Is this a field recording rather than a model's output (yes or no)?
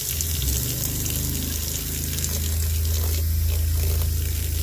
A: yes